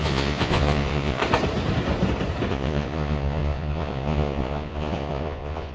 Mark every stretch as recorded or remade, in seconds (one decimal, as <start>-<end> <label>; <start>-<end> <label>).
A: 0.0-1.2 remade; 1.2-2.5 recorded; 2.5-5.7 remade